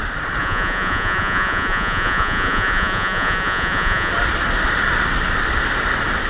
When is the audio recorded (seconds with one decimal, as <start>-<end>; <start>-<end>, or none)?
0.0-0.4; 4.1-6.3